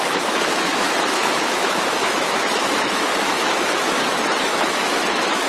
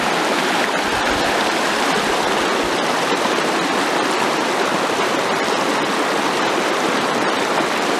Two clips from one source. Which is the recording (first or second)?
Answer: second